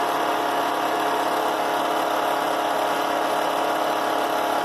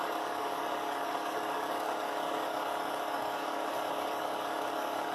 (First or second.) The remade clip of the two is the second